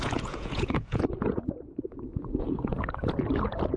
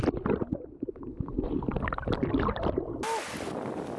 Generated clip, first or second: first